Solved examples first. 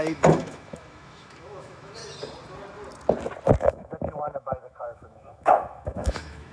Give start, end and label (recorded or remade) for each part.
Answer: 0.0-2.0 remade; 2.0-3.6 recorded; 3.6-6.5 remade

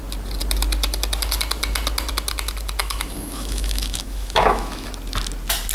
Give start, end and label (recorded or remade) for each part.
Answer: 0.0-2.8 recorded; 2.8-4.9 remade; 4.9-5.7 recorded

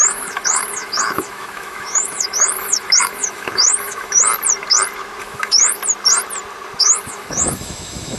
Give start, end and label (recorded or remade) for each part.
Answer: 0.0-4.3 remade; 4.3-5.2 recorded; 5.2-5.8 remade; 5.8-6.8 recorded; 6.8-8.2 remade

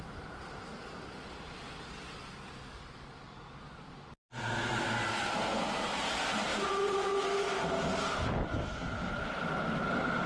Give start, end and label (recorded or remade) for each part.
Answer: 0.0-10.3 recorded

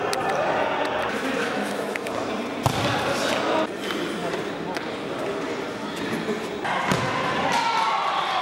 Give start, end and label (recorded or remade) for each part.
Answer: 0.0-1.4 recorded; 1.4-2.1 remade; 2.1-8.4 recorded

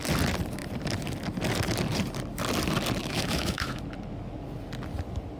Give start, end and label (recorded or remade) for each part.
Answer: 0.0-3.0 recorded; 3.0-3.8 remade; 3.8-5.4 recorded